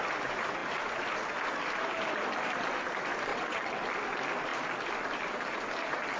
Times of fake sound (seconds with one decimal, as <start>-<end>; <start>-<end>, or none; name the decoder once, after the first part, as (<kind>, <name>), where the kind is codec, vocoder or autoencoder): 3.3-3.8 (vocoder, WaveNeXt)